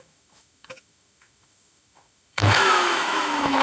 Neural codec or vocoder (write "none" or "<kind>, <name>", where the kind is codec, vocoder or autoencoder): autoencoder, DAC-VAE